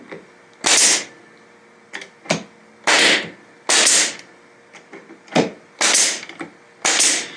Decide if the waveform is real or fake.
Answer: real